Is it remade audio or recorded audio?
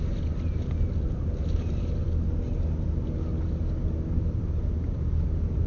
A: recorded